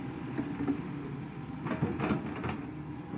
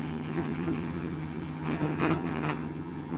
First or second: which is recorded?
first